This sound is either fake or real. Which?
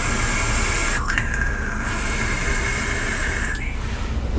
real